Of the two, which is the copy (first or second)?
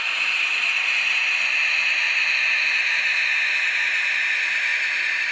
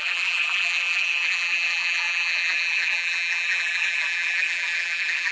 second